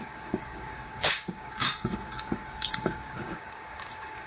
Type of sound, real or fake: fake